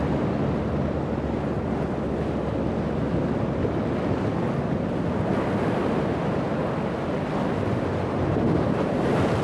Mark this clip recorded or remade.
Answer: recorded